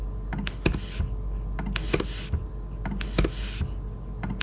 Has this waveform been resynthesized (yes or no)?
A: no